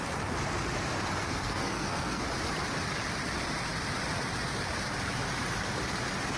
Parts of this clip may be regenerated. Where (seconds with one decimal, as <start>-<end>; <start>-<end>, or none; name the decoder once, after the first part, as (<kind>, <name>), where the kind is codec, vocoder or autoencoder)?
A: 1.2-2.2 (codec, SNAC)